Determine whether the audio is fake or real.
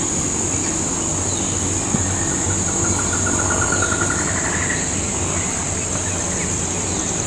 real